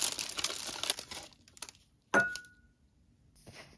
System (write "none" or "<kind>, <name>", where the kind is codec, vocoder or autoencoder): none